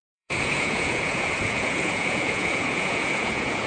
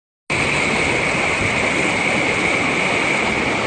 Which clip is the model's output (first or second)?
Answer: first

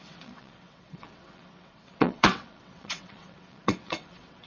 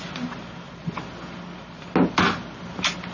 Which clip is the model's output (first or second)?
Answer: first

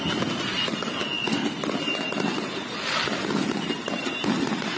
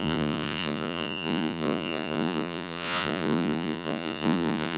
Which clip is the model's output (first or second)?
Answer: second